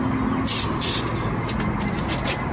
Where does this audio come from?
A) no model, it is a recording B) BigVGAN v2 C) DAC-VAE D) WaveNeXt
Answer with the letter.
A